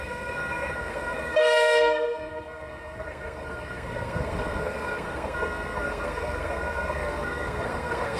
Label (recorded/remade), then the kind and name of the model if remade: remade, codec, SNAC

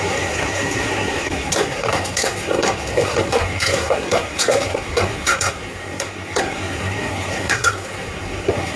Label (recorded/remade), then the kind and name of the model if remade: remade, codec, SNAC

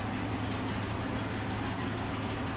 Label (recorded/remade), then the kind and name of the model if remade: recorded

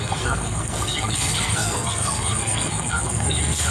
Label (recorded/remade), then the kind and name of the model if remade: remade, codec, SNAC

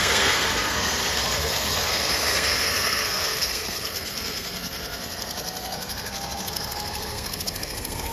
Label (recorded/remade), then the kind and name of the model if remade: remade, codec, SNAC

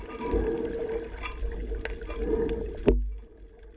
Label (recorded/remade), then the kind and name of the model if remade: recorded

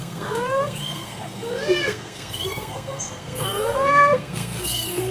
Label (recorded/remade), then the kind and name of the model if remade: remade, codec, SNAC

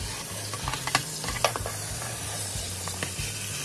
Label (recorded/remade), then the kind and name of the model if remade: recorded